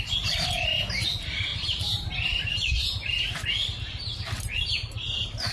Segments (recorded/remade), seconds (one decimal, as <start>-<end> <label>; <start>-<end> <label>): 0.0-1.5 recorded; 1.5-3.2 remade; 3.2-5.5 recorded